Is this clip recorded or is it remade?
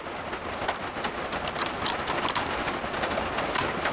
recorded